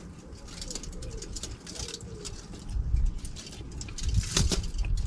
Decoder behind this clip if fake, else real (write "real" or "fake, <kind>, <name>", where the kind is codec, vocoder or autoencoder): real